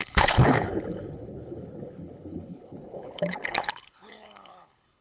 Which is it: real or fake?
fake